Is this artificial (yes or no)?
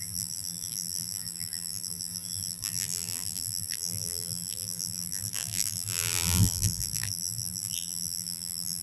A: yes